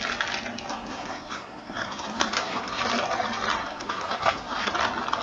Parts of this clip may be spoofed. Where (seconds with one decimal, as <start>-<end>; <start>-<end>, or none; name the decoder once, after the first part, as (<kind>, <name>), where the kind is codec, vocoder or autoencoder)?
0.7-2.8 (codec, SNAC); 3.6-4.7